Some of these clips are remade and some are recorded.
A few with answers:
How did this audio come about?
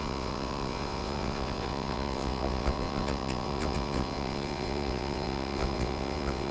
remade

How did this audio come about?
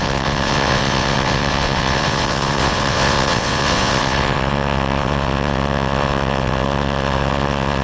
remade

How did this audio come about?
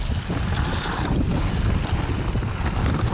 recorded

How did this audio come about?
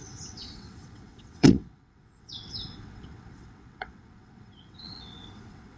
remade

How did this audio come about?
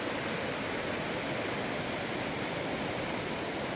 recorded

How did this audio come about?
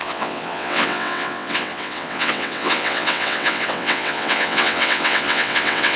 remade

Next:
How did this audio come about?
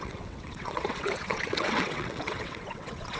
remade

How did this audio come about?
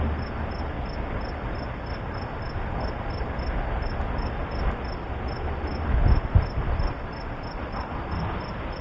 recorded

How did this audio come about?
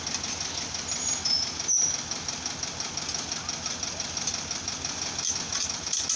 recorded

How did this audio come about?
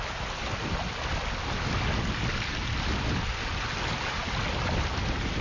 recorded